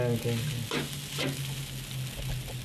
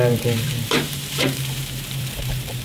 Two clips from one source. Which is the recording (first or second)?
first